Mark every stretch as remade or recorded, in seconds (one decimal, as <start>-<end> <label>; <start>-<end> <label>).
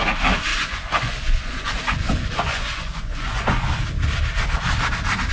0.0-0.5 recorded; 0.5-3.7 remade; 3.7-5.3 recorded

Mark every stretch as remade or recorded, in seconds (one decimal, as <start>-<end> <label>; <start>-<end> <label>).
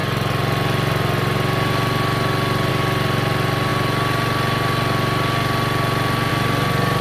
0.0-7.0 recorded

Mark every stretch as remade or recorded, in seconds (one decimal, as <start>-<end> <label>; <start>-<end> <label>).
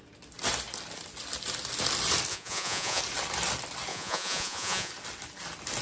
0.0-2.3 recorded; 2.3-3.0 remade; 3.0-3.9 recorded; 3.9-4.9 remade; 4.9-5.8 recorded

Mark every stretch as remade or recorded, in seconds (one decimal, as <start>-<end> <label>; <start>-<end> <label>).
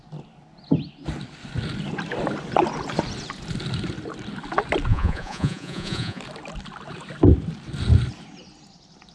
0.0-4.9 recorded; 4.9-6.2 remade; 6.2-9.1 recorded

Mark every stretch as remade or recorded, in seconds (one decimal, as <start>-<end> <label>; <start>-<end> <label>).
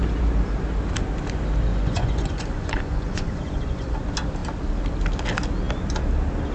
0.0-1.7 recorded; 1.7-4.0 remade; 4.0-6.5 recorded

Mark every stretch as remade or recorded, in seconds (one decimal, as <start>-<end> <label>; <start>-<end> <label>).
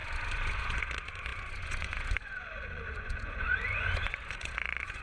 0.0-5.0 remade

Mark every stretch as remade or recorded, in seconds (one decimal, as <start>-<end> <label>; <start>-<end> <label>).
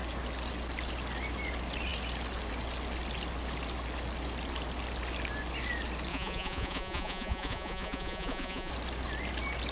0.0-6.1 recorded; 6.1-8.7 remade; 8.7-9.7 recorded